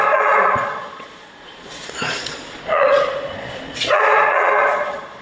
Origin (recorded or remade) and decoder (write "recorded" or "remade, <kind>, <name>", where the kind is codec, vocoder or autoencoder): remade, vocoder, Vocos